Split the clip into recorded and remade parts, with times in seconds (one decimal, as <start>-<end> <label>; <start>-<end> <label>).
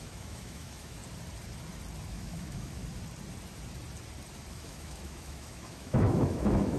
0.0-1.0 remade; 1.0-2.1 recorded; 2.1-2.8 remade; 2.8-4.5 recorded; 4.5-6.8 remade